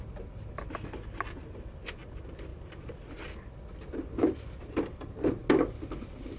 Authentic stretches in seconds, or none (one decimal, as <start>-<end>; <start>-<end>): 0.0-6.4